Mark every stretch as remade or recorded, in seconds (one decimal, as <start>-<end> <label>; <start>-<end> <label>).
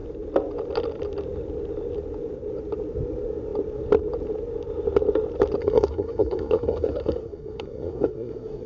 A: 0.0-5.6 recorded; 5.6-8.7 remade